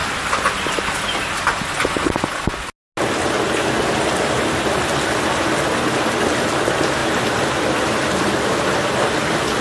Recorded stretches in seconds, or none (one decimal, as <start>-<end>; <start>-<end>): 0.8-7.0; 7.6-9.6